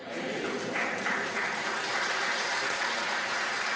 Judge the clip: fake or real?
fake